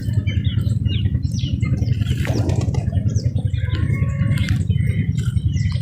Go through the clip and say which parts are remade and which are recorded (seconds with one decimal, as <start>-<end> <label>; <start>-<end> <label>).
0.0-0.5 recorded; 0.5-3.5 remade; 3.5-4.4 recorded; 4.4-5.3 remade; 5.3-5.8 recorded